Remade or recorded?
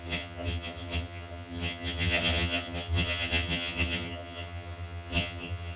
remade